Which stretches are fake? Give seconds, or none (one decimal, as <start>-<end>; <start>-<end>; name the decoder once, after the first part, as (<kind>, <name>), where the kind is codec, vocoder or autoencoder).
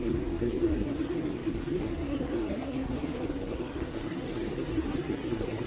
0.0-5.7 (codec, SNAC)